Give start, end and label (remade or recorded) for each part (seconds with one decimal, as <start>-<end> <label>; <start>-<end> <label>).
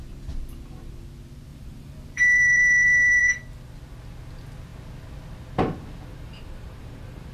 0.0-1.5 recorded; 1.5-3.4 remade; 3.4-6.1 recorded; 6.1-7.3 remade